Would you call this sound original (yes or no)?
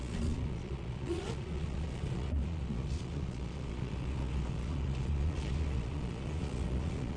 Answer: no